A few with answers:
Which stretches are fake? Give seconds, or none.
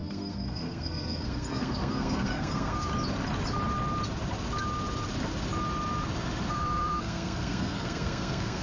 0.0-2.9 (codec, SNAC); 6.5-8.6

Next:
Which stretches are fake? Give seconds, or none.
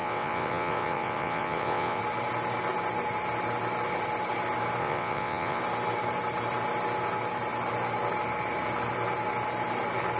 0.0-2.0 (vocoder, WaveNeXt); 4.8-5.6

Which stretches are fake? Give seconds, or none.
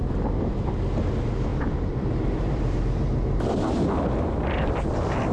1.5-2.8 (vocoder, BigVGAN v2)